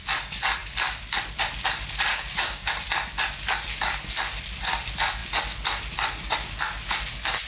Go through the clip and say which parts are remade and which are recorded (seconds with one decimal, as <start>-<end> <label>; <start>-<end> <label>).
0.0-2.1 recorded; 2.1-2.7 remade; 2.7-7.5 recorded